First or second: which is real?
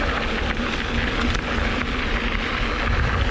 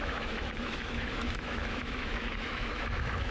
first